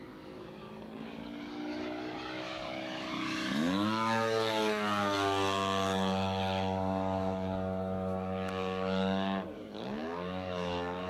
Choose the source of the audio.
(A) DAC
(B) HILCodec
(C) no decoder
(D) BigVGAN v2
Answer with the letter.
A